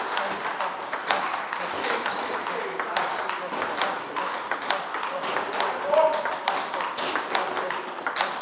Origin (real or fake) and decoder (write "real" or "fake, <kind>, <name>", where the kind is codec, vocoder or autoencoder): real